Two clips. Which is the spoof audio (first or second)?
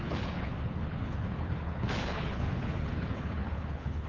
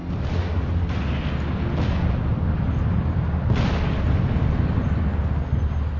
first